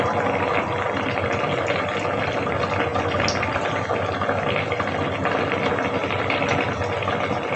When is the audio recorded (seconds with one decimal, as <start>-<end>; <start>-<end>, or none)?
0.0-7.6